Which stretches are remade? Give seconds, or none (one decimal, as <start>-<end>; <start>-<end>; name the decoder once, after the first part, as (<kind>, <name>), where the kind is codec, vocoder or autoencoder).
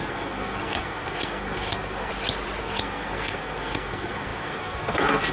0.0-2.1 (codec, SNAC); 2.6-5.3